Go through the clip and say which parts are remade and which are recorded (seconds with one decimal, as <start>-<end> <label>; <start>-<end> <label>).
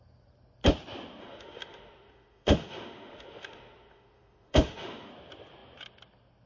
0.0-1.2 recorded; 1.2-5.1 remade; 5.1-6.5 recorded